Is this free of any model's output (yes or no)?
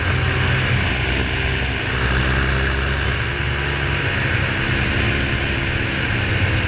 yes